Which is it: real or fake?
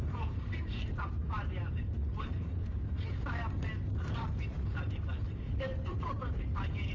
fake